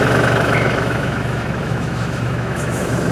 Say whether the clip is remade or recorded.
remade